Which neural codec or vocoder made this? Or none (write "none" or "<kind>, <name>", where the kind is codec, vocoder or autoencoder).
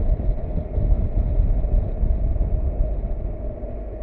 none